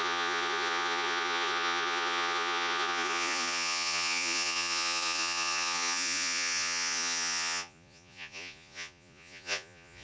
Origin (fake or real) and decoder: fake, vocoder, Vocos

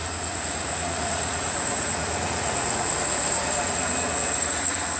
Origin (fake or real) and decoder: fake, vocoder, Vocos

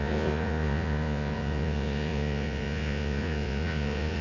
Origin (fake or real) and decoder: fake, vocoder, Vocos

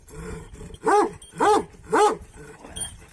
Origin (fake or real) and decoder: real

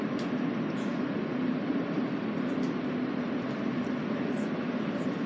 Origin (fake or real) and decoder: real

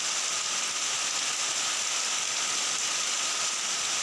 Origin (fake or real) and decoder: real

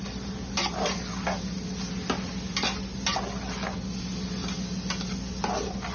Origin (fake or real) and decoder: real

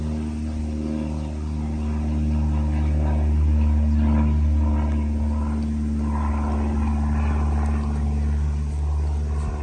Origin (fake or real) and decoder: real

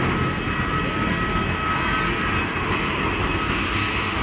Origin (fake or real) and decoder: real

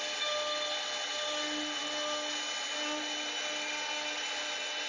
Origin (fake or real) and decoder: real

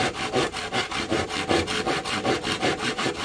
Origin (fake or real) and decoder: real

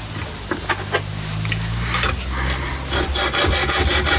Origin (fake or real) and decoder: real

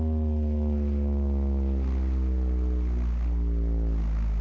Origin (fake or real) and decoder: real